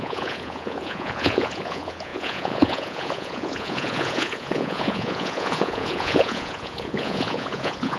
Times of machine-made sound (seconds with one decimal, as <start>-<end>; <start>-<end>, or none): 0.0-8.0